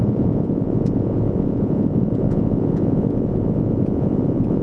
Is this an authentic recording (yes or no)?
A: no